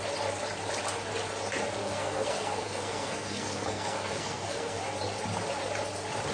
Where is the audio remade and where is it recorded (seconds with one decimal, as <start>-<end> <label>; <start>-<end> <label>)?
0.0-1.8 recorded; 1.8-4.8 remade; 4.8-6.3 recorded